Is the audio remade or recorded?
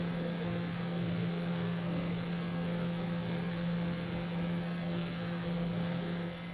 remade